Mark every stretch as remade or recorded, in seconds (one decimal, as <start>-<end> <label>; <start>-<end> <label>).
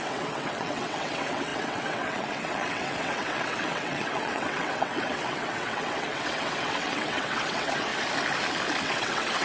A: 0.0-7.9 remade; 7.9-8.8 recorded; 8.8-9.4 remade